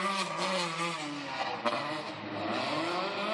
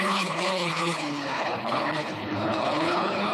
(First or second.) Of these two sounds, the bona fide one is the first